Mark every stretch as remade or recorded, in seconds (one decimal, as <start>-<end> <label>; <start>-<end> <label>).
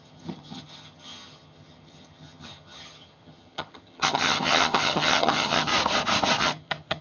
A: 0.0-5.7 remade; 5.7-6.4 recorded; 6.4-7.0 remade